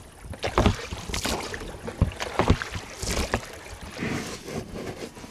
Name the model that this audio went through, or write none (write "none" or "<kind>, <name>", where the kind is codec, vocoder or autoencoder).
none